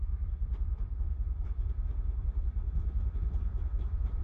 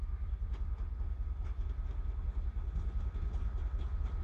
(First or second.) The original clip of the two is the second